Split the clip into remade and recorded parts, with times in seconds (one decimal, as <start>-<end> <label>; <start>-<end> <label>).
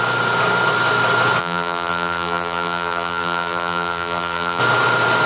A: 0.0-1.4 recorded; 1.4-4.6 remade; 4.6-5.3 recorded